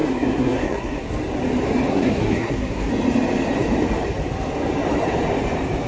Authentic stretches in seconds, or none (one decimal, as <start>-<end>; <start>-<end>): 1.1-1.9; 2.9-5.9